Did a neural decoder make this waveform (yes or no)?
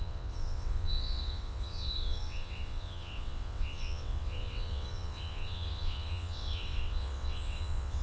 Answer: yes